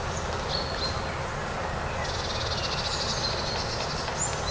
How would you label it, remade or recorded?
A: recorded